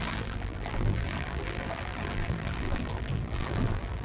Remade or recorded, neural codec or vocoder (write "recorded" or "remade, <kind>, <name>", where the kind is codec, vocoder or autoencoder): remade, vocoder, BigVGAN v2